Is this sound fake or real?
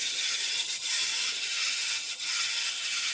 fake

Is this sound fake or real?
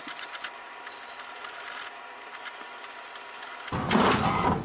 real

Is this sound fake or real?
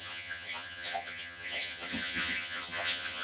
fake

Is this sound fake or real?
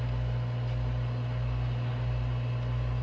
real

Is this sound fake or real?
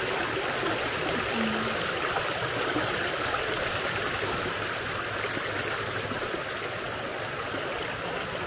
real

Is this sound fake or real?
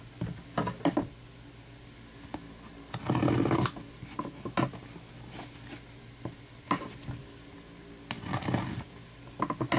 real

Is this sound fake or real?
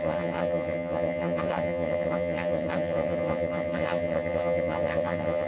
fake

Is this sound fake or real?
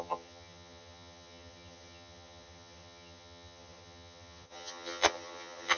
fake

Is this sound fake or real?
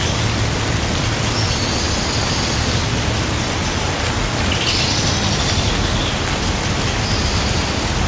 real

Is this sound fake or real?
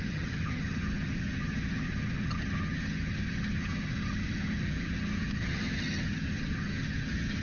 fake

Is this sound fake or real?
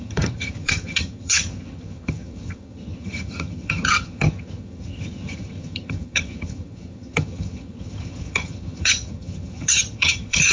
fake